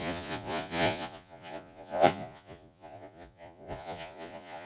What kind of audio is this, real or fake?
fake